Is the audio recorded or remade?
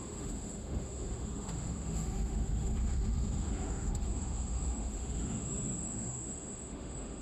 remade